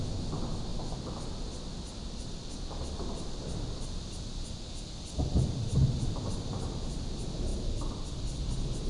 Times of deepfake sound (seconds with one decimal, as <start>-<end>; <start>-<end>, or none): none